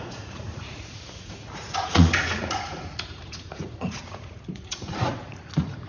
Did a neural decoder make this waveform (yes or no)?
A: yes